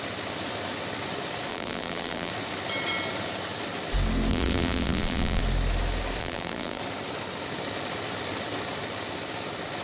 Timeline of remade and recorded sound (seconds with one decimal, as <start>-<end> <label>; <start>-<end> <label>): 0.0-1.5 recorded; 1.5-2.3 remade; 2.3-4.3 recorded; 4.3-5.4 remade; 5.4-6.2 recorded; 6.2-6.8 remade; 6.8-9.8 recorded